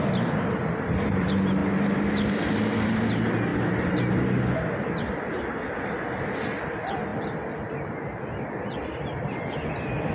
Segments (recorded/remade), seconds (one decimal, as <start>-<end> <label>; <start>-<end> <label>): 0.0-1.6 recorded; 1.6-3.1 remade; 3.1-10.1 recorded